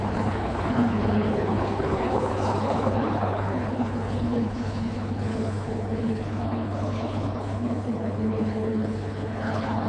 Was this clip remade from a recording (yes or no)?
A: yes